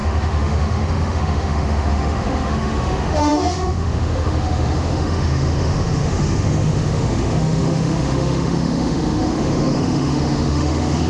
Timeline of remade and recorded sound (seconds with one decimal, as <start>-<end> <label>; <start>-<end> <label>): 0.0-11.1 remade